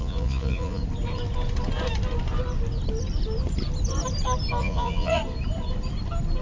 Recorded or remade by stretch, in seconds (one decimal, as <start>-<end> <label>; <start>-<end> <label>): 0.0-0.8 remade; 0.8-4.6 recorded; 4.6-5.2 remade; 5.2-6.4 recorded